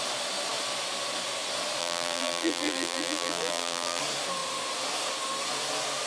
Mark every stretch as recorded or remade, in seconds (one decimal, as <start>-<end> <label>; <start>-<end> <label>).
0.0-1.8 recorded; 1.8-4.0 remade; 4.0-6.1 recorded